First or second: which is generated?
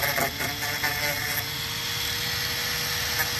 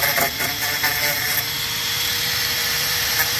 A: second